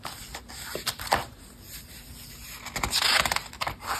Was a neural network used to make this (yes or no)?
no